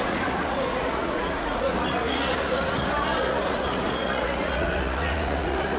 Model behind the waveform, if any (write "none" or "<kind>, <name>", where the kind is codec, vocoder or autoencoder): vocoder, Vocos